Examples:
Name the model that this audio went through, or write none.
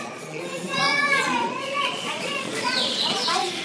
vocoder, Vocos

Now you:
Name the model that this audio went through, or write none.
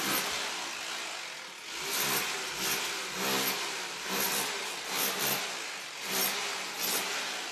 none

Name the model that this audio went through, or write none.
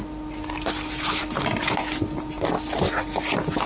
none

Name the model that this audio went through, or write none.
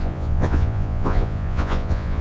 vocoder, Vocos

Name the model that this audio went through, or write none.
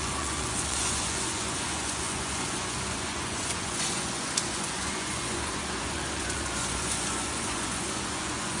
vocoder, Vocos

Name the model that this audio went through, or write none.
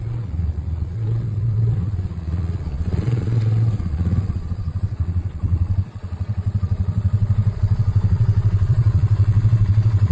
vocoder, Vocos